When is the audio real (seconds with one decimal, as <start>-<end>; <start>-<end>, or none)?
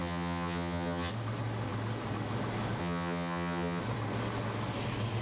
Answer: 1.1-2.8; 3.8-5.2